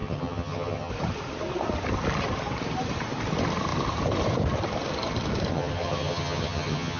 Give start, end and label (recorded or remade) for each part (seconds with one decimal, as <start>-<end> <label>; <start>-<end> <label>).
0.0-0.9 remade; 0.9-5.5 recorded; 5.5-7.0 remade